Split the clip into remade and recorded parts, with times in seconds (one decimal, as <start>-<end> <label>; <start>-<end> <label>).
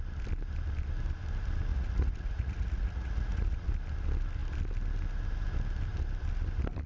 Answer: 0.0-1.7 recorded; 1.7-3.7 remade; 3.7-6.9 recorded